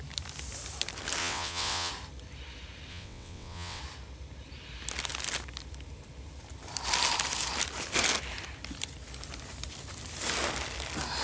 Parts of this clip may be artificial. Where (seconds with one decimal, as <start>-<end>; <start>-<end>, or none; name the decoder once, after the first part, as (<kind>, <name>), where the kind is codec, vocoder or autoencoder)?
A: 1.2-1.9 (vocoder, WaveNeXt); 2.9-3.8